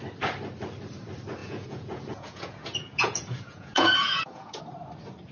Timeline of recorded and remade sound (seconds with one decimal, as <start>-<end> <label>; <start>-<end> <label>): 0.0-1.4 recorded; 1.4-4.6 remade; 4.6-5.3 recorded